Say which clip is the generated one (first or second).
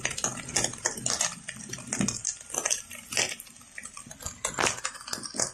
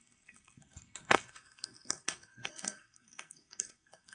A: second